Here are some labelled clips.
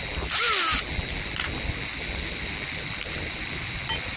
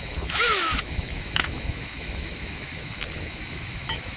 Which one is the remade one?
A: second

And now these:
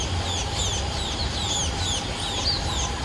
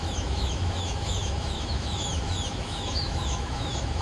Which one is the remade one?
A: second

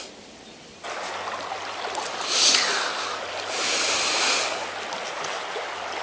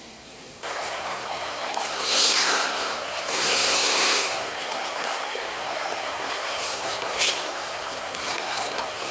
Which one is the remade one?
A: second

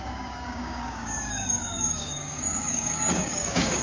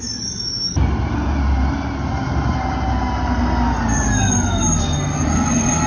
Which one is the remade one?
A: first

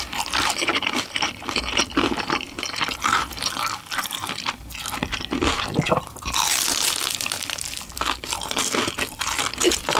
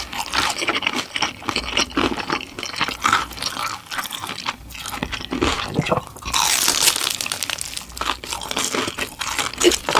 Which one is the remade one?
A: first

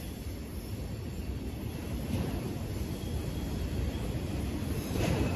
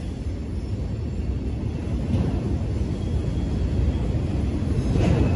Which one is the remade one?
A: first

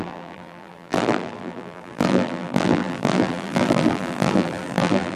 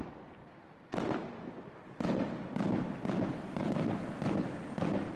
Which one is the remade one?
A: first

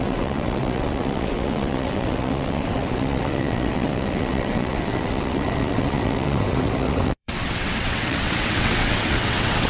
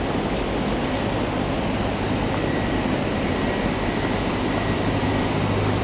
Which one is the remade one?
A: first